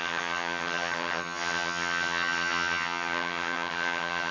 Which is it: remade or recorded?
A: remade